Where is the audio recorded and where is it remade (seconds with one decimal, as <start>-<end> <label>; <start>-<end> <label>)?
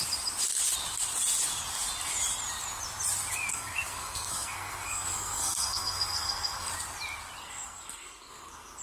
0.0-3.5 recorded; 3.5-6.7 remade; 6.7-7.4 recorded; 7.4-8.8 remade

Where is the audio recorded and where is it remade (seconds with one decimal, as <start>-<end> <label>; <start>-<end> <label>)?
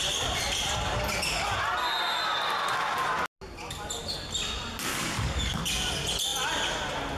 0.0-4.9 recorded; 4.9-5.6 remade; 5.6-7.2 recorded